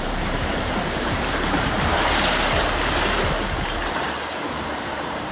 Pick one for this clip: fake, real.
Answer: fake